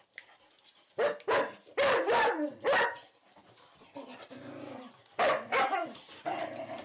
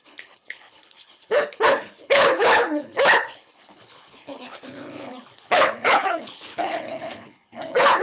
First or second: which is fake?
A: second